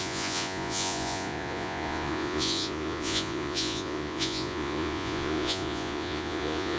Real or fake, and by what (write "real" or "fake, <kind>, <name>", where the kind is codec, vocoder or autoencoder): fake, vocoder, Vocos